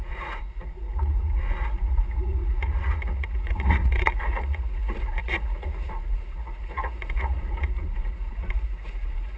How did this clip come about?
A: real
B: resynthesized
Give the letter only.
B